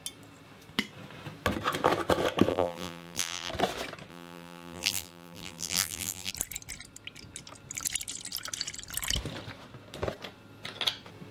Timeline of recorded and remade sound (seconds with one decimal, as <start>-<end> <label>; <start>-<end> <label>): 0.0-2.5 recorded; 2.5-3.5 remade; 3.5-4.1 recorded; 4.1-6.3 remade; 6.3-11.3 recorded